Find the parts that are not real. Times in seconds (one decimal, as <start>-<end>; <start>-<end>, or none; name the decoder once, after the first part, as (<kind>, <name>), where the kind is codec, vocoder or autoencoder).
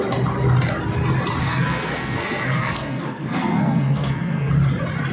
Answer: 1.4-4.5 (codec, SNAC)